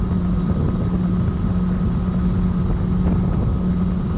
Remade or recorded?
recorded